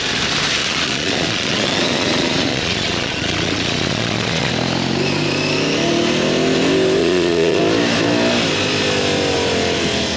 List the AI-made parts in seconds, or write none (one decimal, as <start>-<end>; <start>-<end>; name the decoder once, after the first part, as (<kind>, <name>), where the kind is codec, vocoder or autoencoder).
0.6-4.5 (vocoder, Vocos); 7.0-7.6